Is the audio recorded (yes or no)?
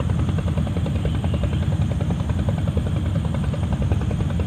yes